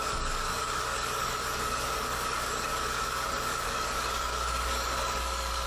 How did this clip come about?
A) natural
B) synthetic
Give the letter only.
B